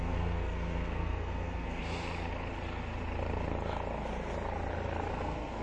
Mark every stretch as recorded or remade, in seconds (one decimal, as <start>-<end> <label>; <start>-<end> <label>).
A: 0.0-1.8 remade; 1.8-5.1 recorded; 5.1-5.6 remade